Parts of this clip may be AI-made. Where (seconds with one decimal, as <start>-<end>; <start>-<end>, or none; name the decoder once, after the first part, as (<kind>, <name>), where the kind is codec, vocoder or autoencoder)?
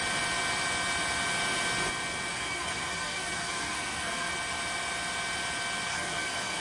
2.3-4.3 (codec, SNAC); 5.9-6.6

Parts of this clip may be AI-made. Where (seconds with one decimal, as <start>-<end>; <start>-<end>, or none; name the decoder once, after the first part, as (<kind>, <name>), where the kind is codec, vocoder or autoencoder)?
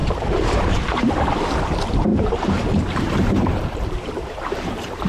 0.0-1.2 (vocoder, BigVGAN v2); 2.1-5.1